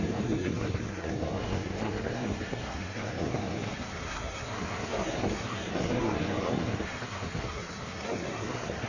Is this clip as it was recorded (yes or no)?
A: no